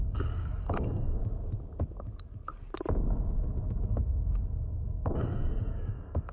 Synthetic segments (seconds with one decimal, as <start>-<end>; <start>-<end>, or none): 0.0-1.2; 3.8-6.3